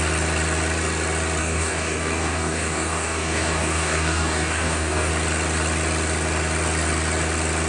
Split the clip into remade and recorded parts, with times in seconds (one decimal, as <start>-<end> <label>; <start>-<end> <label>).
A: 0.0-1.4 recorded; 1.4-5.1 remade; 5.1-7.7 recorded